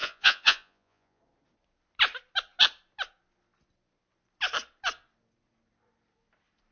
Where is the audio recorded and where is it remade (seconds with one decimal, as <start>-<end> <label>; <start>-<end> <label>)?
0.0-1.2 remade; 1.2-6.7 recorded